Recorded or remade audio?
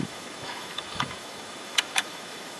remade